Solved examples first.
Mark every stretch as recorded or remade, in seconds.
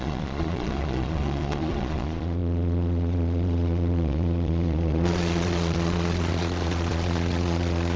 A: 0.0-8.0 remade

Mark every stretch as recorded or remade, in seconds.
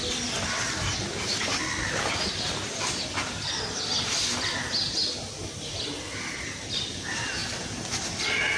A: 0.0-8.6 recorded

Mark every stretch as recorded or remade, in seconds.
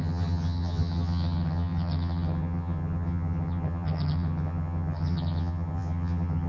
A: 0.0-6.5 remade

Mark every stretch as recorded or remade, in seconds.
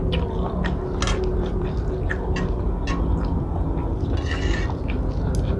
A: 0.0-1.3 recorded; 1.3-1.9 remade; 1.9-5.6 recorded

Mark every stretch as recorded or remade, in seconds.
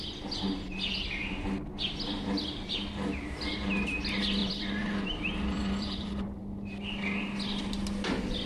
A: 0.0-3.5 recorded; 3.5-4.0 remade; 4.0-4.4 recorded; 4.4-6.4 remade; 6.4-8.5 recorded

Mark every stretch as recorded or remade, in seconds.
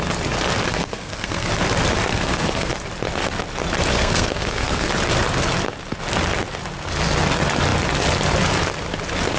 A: 0.0-0.7 recorded; 0.7-1.5 remade; 1.5-2.1 recorded; 2.1-2.7 remade; 2.7-3.9 recorded; 3.9-4.9 remade; 4.9-9.4 recorded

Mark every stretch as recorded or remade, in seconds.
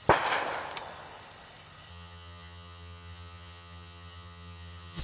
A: 0.0-1.9 recorded; 1.9-5.0 remade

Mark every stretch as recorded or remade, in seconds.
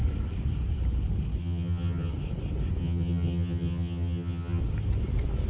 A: 0.0-1.4 recorded; 1.4-2.1 remade; 2.1-2.8 recorded; 2.8-4.6 remade; 4.6-5.5 recorded